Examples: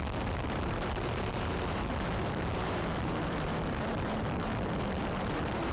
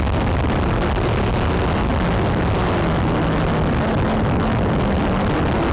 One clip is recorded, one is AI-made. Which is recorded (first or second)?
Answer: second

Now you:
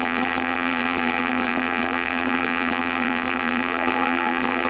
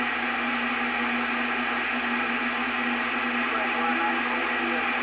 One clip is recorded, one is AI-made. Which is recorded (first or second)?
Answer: second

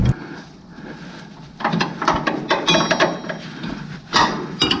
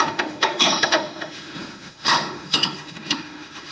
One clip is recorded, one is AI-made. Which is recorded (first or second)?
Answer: first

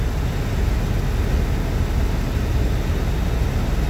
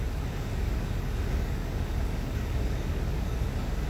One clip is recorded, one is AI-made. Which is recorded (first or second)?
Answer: first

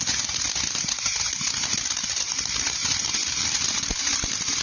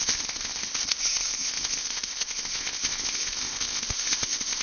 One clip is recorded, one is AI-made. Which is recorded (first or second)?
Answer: first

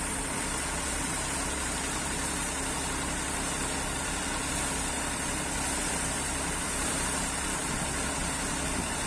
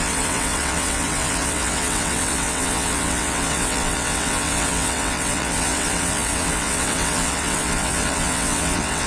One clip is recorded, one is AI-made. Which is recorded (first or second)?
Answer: first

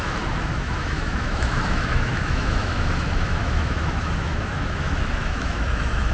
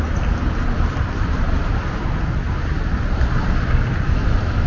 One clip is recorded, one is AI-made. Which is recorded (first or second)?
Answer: second